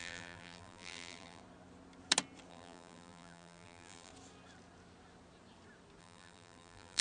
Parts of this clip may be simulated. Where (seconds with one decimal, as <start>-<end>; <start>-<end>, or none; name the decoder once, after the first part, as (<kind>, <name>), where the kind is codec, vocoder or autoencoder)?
0.0-1.4 (vocoder, BigVGAN v2); 2.5-4.1; 6.0-7.0